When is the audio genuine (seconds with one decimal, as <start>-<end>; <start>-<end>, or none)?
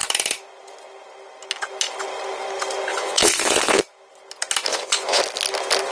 0.0-2.9; 3.8-4.7; 5.2-5.9